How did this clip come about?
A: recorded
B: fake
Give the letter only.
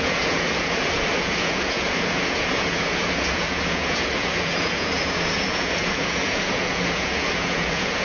B